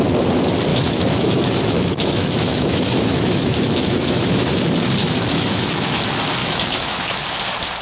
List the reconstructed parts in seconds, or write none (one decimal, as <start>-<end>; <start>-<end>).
0.7-4.6; 5.0-6.0; 6.4-7.2

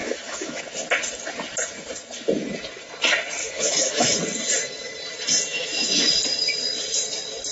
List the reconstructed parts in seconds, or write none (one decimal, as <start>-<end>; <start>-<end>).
0.0-0.6; 3.4-4.2; 5.5-6.1

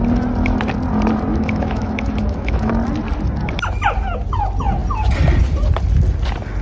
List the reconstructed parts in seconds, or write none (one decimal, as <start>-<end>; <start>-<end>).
1.3-2.7

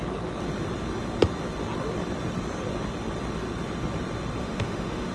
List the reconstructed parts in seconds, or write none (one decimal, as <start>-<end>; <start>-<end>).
4.4-5.1